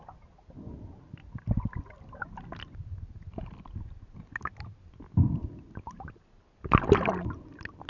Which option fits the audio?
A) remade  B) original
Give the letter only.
B